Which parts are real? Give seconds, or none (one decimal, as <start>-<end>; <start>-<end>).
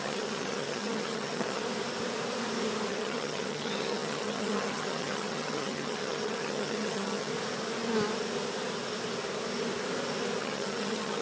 1.6-2.9; 7.3-10.4